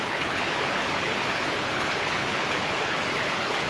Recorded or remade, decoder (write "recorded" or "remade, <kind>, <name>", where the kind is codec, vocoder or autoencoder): remade, codec, HILCodec